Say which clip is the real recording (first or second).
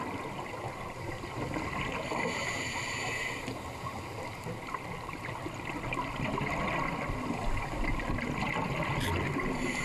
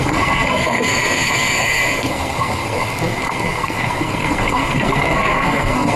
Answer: first